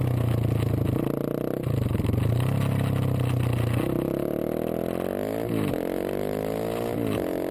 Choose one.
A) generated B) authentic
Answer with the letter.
B